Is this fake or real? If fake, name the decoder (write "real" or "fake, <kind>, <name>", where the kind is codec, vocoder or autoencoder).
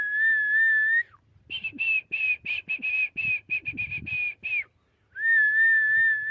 real